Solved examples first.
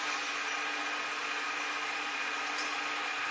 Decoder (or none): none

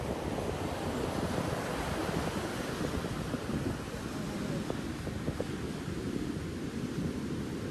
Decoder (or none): none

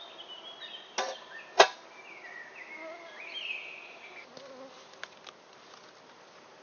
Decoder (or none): none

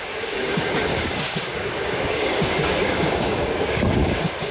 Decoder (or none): codec, DAC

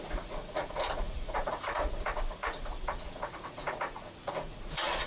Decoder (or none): vocoder, Vocos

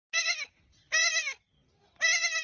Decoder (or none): none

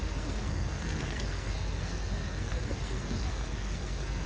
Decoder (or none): codec, SNAC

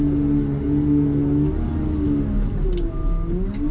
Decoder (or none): none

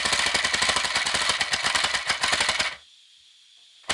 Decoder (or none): none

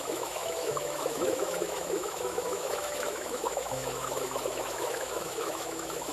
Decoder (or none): autoencoder, DAC-VAE